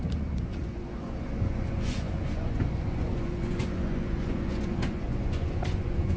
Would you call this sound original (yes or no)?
no